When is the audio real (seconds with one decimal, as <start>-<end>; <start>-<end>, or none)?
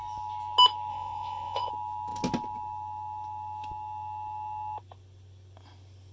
0.0-0.9; 1.7-6.1